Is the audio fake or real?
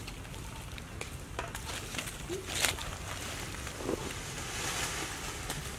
real